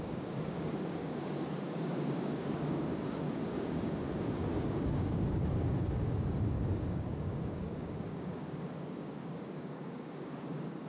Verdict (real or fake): fake